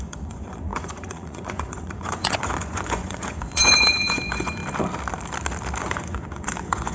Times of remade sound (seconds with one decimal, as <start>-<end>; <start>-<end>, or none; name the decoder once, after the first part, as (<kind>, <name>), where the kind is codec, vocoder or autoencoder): 0.0-4.6 (vocoder, Vocos); 5.8-6.9